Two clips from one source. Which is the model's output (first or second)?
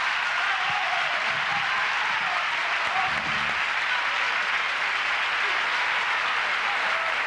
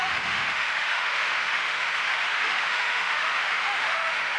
second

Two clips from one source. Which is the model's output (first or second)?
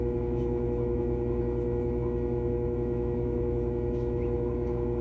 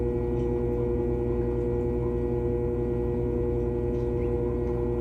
first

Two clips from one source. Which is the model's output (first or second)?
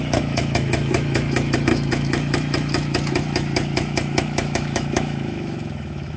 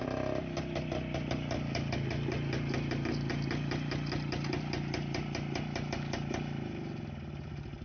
first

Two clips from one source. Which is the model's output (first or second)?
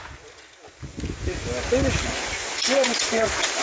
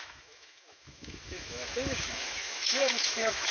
second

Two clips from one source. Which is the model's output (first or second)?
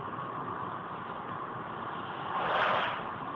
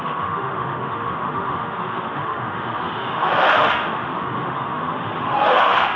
second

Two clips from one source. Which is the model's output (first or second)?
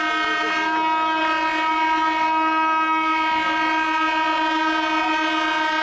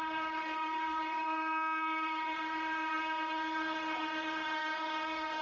second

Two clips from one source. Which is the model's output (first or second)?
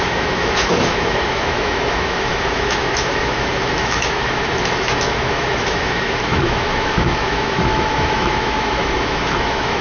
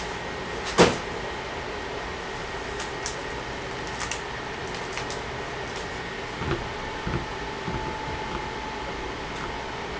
first